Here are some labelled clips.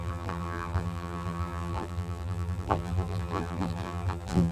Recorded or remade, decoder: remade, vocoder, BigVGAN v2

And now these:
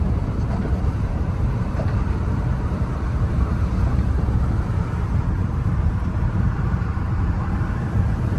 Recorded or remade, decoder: remade, vocoder, BigVGAN v2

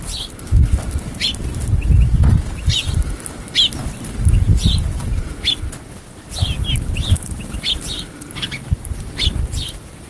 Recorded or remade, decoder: recorded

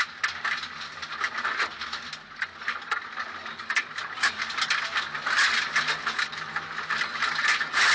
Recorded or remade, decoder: recorded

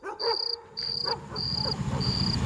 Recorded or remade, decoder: remade, vocoder, BigVGAN v2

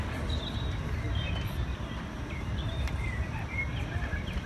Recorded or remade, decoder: remade, vocoder, BigVGAN v2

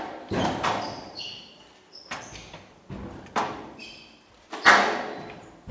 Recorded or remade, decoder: remade, vocoder, BigVGAN v2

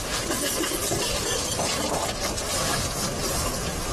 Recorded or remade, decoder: remade, vocoder, BigVGAN v2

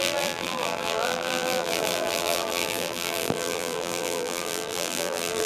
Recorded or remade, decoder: remade, vocoder, BigVGAN v2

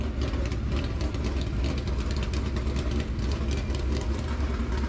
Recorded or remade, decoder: recorded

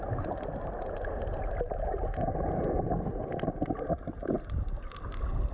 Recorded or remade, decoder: recorded